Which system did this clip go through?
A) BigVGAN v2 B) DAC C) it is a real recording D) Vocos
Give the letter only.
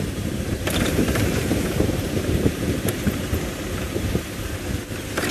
A